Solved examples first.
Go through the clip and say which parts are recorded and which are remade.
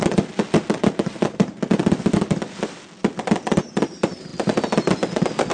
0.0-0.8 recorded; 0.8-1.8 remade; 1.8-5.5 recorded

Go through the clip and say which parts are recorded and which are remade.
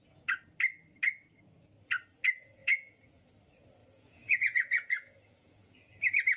0.0-2.6 recorded; 2.6-3.3 remade; 3.3-3.8 recorded; 3.8-6.0 remade; 6.0-6.4 recorded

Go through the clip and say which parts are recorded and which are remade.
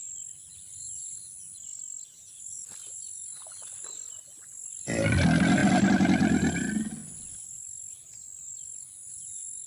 0.0-9.7 recorded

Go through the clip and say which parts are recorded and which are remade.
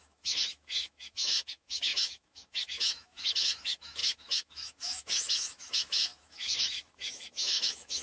0.0-8.0 remade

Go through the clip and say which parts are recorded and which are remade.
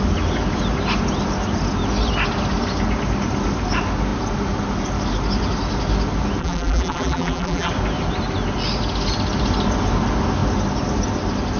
0.0-6.4 recorded; 6.4-7.7 remade; 7.7-11.6 recorded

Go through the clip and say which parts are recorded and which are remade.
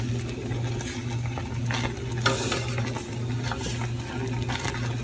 0.0-5.0 recorded